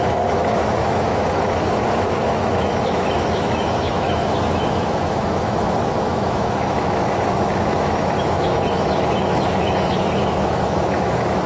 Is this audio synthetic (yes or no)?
yes